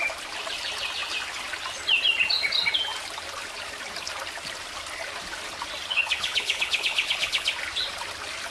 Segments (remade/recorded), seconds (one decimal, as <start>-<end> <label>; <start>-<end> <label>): 0.0-5.9 recorded; 5.9-7.5 remade; 7.5-8.5 recorded